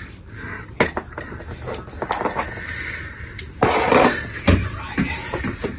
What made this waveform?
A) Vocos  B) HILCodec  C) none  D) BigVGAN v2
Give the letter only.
C